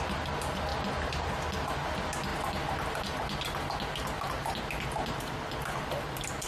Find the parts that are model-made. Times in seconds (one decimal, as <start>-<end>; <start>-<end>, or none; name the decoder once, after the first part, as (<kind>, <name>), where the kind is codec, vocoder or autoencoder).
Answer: 0.7-1.4 (vocoder, BigVGAN v2)